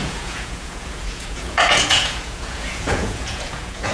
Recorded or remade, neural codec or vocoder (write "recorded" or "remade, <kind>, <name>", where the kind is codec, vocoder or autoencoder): remade, vocoder, Vocos